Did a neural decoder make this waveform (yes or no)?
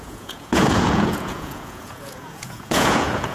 yes